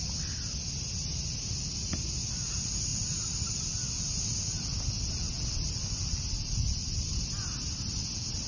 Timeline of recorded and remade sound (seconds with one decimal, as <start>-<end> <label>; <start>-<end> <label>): 0.0-8.5 recorded